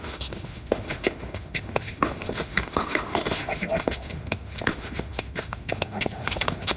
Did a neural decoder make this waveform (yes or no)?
yes